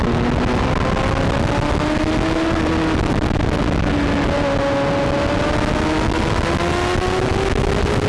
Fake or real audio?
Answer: real